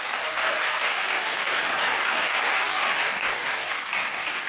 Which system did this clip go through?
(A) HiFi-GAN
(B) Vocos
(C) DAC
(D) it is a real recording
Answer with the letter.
C